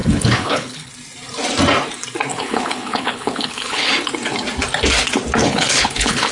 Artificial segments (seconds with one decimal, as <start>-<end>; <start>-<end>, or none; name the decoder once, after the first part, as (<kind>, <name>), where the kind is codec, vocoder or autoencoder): 0.0-0.9 (codec, HILCodec); 2.3-3.9; 5.4-6.3